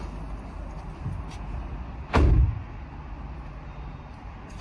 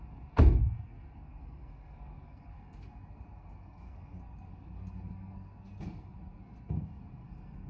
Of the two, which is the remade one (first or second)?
second